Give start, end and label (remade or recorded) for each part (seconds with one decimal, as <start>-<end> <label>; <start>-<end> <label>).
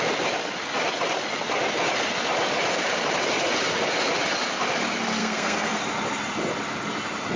0.0-5.2 recorded; 5.2-5.8 remade; 5.8-7.4 recorded